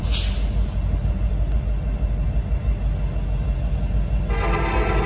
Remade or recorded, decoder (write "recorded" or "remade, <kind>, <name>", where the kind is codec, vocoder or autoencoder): recorded